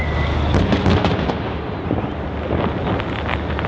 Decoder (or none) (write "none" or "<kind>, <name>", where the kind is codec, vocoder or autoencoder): none